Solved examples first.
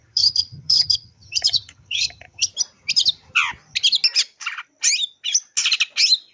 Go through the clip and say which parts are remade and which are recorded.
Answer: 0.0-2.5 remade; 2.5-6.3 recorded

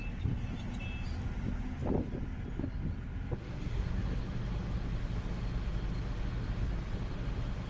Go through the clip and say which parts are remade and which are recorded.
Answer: 0.0-3.4 recorded; 3.4-4.2 remade; 4.2-7.7 recorded

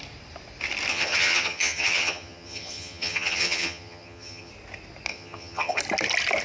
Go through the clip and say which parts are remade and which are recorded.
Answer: 0.0-0.9 recorded; 0.9-4.5 remade; 4.5-5.1 recorded; 5.1-5.8 remade; 5.8-6.4 recorded

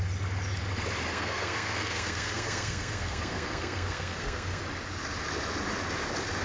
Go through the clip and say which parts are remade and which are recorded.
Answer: 0.0-1.1 recorded; 1.1-4.6 remade; 4.6-6.4 recorded

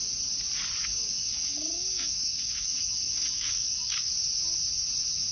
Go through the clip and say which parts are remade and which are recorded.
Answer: 0.0-0.9 recorded; 0.9-4.1 remade; 4.1-5.3 recorded

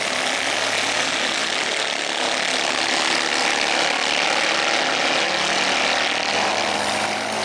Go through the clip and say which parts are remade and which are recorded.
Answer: 0.0-7.4 recorded

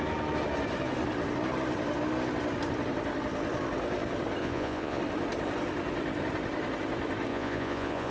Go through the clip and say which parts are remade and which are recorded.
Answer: 0.0-4.4 recorded; 4.4-5.0 remade; 5.0-7.3 recorded; 7.3-8.1 remade